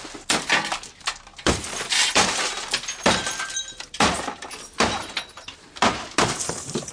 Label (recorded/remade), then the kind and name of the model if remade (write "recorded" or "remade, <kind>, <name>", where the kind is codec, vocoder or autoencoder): recorded